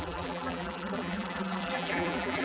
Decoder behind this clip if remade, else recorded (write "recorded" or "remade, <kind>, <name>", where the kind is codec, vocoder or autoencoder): remade, vocoder, BigVGAN v2